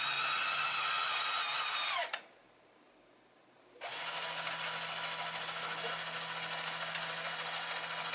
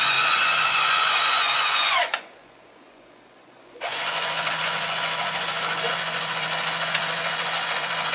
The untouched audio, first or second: first